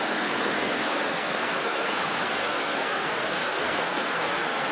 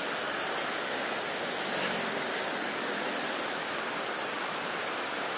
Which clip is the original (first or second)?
second